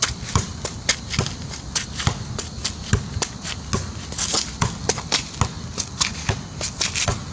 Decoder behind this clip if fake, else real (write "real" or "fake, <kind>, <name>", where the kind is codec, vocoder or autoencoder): real